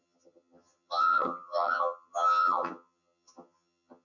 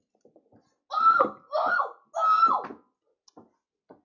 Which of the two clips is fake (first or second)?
first